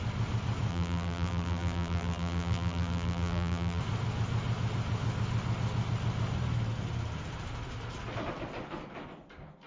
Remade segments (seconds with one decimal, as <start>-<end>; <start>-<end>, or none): 0.7-3.8

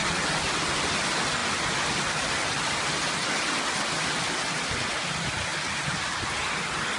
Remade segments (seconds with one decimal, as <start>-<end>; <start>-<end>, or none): none

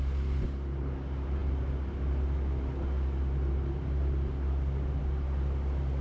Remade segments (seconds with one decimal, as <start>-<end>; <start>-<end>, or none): none

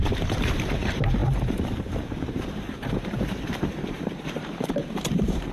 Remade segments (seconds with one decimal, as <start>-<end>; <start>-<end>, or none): 0.0-5.5

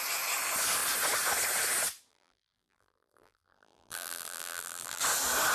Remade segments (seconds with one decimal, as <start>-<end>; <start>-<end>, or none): 2.1-5.0

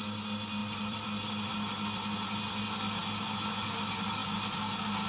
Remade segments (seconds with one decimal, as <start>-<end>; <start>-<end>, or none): 0.6-1.5